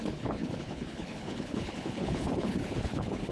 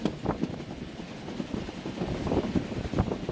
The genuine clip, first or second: second